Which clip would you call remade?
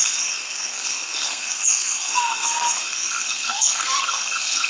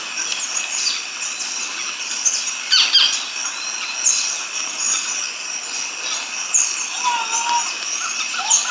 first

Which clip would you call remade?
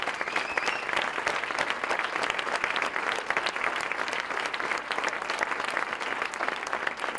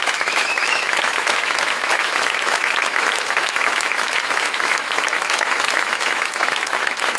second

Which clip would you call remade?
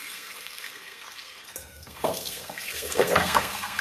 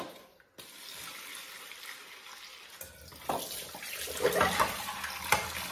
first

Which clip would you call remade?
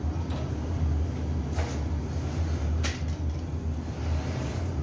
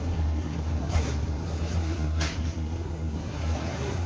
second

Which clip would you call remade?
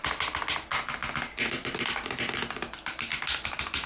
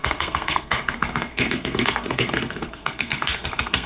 second